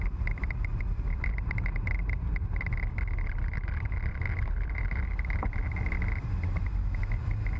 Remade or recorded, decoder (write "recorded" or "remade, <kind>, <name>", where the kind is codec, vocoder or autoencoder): remade, vocoder, BigVGAN v2